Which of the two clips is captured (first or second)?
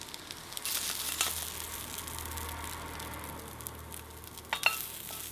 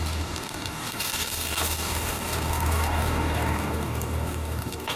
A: first